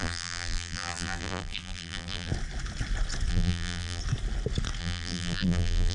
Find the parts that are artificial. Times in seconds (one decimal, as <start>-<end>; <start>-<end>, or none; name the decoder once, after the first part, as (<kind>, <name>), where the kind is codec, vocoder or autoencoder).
0.0-2.3 (vocoder, BigVGAN v2); 3.3-4.0; 4.8-5.9